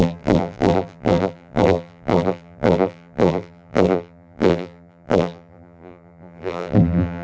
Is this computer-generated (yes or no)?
yes